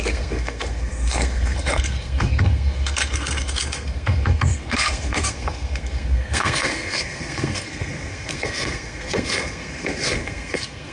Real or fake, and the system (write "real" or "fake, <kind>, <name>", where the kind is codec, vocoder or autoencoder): fake, codec, SNAC